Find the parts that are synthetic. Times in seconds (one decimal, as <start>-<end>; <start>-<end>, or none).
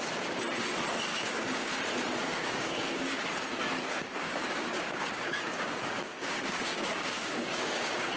1.1-1.8; 2.2-3.2; 3.8-8.2